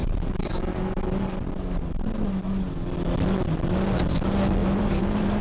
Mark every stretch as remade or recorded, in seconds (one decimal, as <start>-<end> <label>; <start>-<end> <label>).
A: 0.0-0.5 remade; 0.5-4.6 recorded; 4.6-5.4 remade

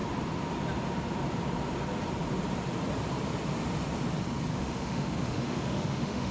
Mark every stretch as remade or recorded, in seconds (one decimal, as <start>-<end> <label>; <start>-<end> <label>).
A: 0.0-4.5 recorded; 4.5-6.3 remade

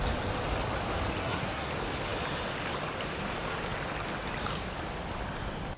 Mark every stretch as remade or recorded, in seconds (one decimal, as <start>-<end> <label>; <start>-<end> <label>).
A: 0.0-1.2 recorded; 1.2-1.7 remade; 1.7-5.8 recorded